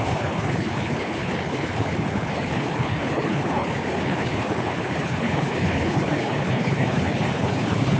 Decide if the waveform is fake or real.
fake